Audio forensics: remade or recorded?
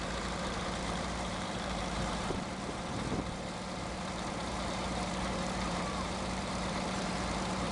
remade